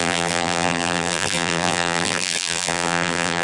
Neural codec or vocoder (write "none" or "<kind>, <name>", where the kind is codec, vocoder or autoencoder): vocoder, BigVGAN v2